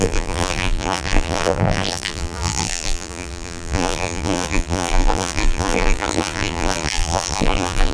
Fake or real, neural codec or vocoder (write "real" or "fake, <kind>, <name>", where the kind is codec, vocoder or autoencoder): fake, vocoder, BigVGAN v2